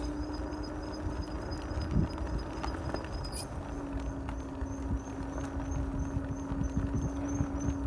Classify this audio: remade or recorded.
recorded